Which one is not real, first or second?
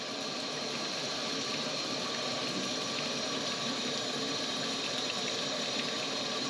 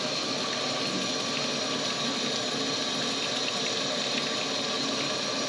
first